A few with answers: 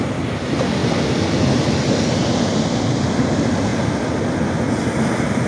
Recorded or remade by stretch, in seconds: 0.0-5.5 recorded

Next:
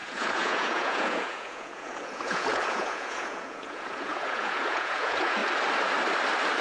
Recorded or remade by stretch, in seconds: 0.0-5.4 remade; 5.4-6.6 recorded